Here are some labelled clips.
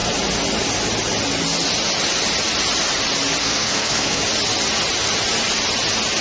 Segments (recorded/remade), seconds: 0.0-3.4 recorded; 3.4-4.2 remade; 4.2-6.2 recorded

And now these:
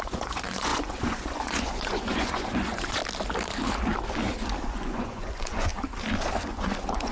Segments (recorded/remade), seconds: 0.0-3.0 remade; 3.0-4.7 recorded; 4.7-5.7 remade; 5.7-6.4 recorded; 6.4-7.1 remade

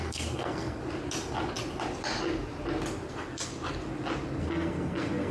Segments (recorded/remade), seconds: 0.0-0.8 remade; 0.8-3.1 recorded; 3.1-3.5 remade; 3.5-4.4 recorded; 4.4-5.3 remade

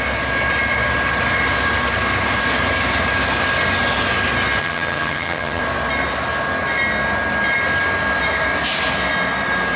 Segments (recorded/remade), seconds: 0.0-4.6 recorded; 4.6-5.6 remade; 5.6-9.8 recorded